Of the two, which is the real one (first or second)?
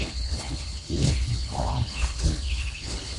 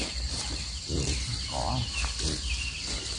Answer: second